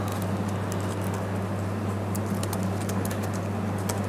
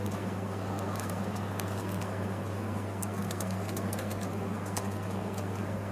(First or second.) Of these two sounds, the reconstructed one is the second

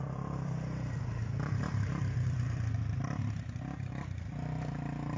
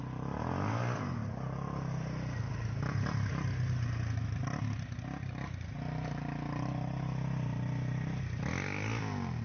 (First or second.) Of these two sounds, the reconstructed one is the first